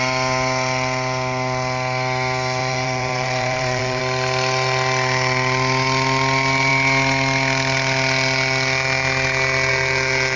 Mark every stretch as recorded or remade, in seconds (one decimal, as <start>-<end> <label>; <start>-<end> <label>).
0.0-2.6 recorded; 2.6-4.0 remade; 4.0-10.4 recorded